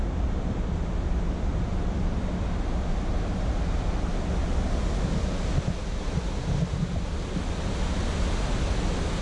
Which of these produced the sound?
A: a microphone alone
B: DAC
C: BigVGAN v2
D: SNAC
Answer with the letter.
A